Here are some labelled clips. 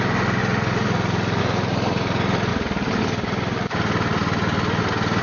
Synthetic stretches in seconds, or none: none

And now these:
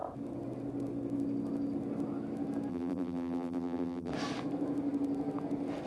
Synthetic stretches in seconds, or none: 2.7-4.1 (vocoder, BigVGAN v2)

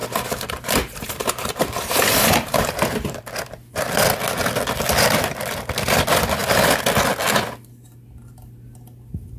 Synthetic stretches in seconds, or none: 0.0-3.3 (vocoder, BigVGAN v2)

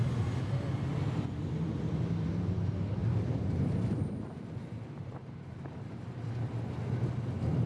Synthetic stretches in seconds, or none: 3.0-6.0 (vocoder, BigVGAN v2)